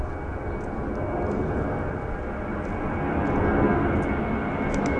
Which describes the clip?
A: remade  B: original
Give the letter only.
B